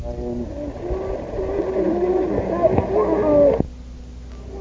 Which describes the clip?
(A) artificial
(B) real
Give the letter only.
B